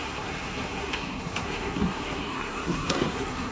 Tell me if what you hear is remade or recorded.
remade